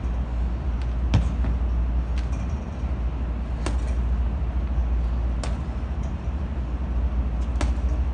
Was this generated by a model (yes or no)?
no